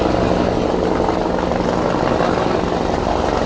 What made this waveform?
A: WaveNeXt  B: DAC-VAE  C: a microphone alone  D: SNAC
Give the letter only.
C